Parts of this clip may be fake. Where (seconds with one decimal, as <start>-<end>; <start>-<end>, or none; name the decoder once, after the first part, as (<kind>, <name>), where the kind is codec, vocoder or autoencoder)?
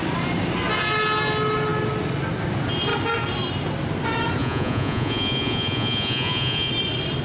4.4-6.7 (vocoder, Vocos)